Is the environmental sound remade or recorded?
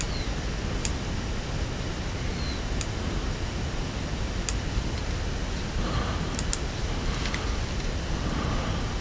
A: recorded